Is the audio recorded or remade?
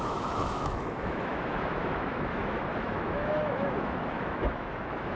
remade